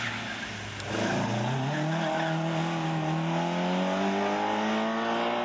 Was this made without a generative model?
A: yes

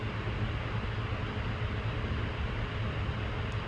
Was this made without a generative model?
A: yes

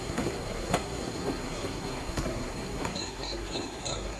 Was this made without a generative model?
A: no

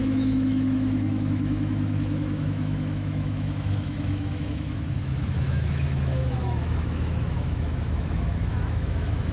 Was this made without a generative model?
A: no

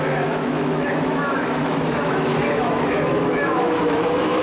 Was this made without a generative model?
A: no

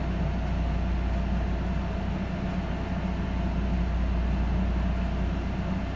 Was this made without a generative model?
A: yes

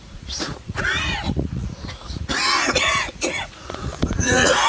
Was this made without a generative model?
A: no